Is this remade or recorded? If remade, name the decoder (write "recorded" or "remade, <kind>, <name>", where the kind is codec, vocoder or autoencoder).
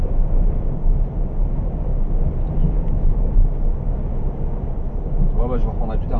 recorded